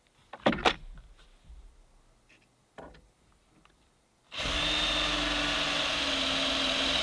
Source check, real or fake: real